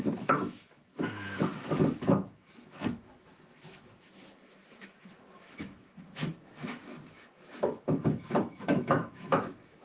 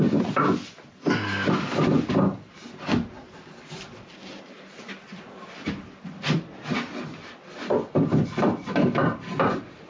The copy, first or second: first